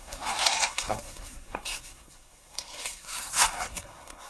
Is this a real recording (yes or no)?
no